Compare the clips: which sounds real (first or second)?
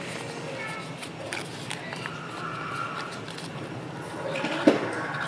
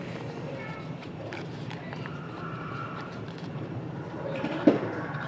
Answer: first